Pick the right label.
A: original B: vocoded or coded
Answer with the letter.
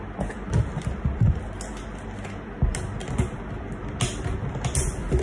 A